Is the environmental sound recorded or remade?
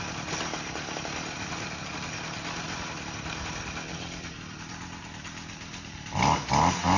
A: recorded